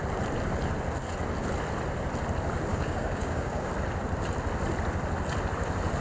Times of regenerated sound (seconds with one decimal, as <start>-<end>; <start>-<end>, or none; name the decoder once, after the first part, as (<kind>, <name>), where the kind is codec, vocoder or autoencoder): 2.7-3.7 (codec, DAC)